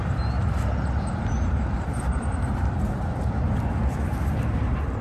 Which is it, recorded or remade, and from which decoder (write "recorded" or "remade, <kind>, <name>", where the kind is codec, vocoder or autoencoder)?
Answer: recorded